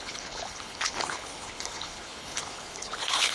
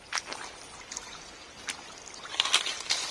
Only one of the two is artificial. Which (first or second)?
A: first